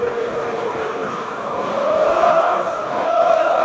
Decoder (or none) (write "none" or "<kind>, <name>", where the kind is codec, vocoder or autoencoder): codec, DAC